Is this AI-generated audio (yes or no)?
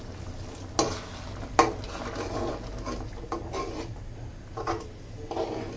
no